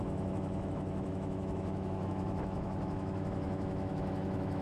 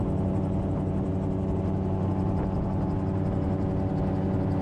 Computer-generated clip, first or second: first